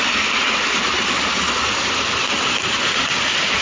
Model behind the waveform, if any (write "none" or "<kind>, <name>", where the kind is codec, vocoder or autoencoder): none